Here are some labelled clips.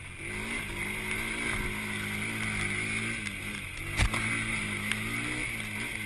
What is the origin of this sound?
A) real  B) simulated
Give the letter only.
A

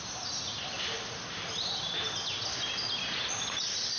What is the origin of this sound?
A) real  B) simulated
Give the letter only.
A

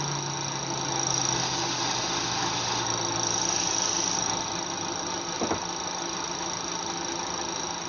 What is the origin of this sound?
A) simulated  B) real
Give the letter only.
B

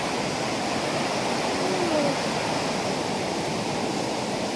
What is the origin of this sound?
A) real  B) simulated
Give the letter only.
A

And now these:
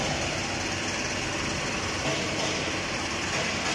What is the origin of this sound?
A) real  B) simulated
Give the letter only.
A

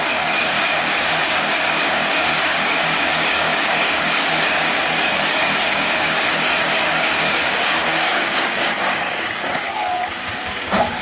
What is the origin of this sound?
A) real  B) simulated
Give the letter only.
B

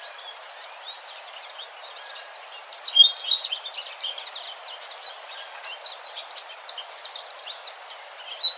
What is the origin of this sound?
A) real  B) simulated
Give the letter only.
A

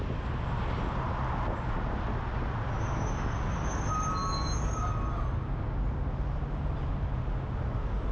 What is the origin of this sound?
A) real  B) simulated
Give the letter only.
A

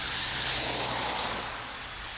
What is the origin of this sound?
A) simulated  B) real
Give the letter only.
A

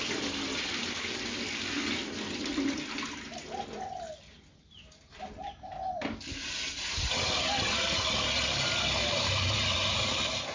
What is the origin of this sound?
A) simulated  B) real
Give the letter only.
B